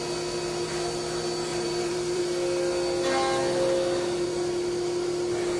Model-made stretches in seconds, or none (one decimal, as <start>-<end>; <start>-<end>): 1.5-2.2